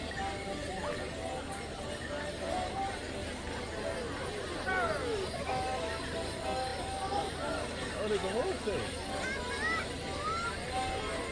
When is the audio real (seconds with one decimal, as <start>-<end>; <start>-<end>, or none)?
0.0-11.3